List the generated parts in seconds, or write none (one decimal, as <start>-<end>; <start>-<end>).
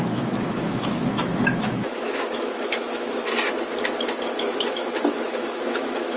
0.0-3.3; 4.4-6.2